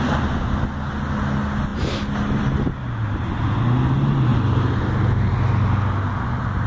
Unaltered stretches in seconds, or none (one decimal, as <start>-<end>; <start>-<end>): 0.0-6.7